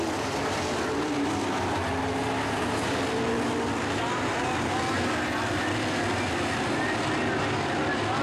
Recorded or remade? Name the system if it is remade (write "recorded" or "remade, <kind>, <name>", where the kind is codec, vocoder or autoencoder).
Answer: recorded